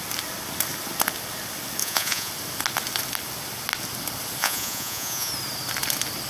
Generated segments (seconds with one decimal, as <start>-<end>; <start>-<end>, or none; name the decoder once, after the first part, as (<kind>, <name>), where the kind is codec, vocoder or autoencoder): 1.8-2.3 (vocoder, Vocos); 4.4-5.3